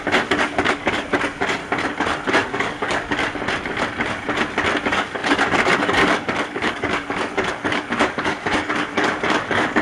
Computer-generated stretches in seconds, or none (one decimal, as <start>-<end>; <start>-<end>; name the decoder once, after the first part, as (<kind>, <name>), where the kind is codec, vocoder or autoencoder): 0.0-1.6 (codec, DAC); 2.3-3.2; 4.8-9.8